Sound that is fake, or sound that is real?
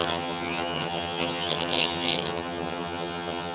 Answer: fake